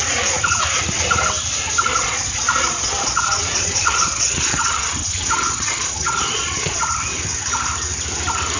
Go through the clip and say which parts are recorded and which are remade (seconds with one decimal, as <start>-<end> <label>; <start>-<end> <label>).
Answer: 0.0-1.9 recorded; 1.9-6.9 remade; 6.9-8.6 recorded